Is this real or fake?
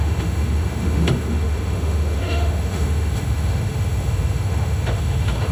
fake